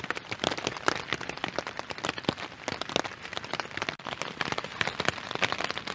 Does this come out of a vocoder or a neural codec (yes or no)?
no